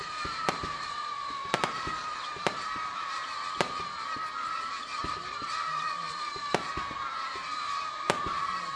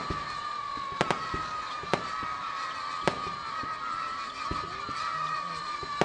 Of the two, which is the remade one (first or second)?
first